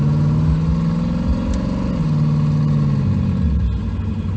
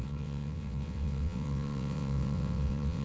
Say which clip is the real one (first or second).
first